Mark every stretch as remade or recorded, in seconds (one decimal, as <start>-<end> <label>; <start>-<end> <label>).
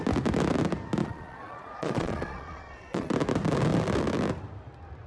0.0-1.0 recorded; 1.0-3.1 remade; 3.1-5.1 recorded